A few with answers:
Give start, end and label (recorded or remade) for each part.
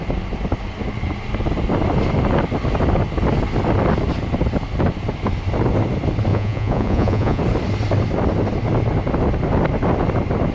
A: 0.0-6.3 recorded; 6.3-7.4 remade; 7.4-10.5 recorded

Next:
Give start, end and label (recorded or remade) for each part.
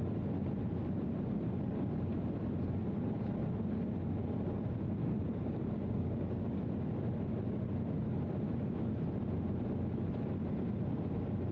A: 0.0-5.0 recorded; 5.0-6.6 remade; 6.6-11.5 recorded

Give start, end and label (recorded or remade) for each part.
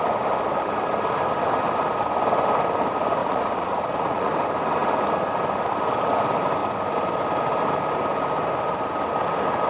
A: 0.0-3.2 recorded; 3.2-4.3 remade; 4.3-9.7 recorded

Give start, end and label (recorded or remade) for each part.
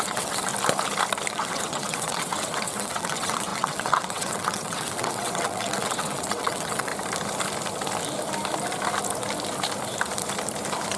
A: 0.0-0.5 remade; 0.5-1.3 recorded; 1.3-6.9 remade; 6.9-11.0 recorded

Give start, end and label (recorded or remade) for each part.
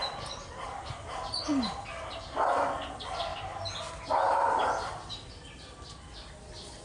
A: 0.0-6.8 recorded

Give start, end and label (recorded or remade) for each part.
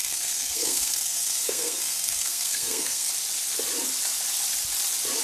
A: 0.0-3.1 remade; 3.1-5.2 recorded